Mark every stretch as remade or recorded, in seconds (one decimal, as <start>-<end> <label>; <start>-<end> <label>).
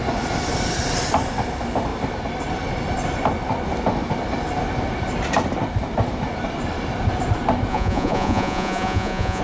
0.0-7.7 recorded; 7.7-9.4 remade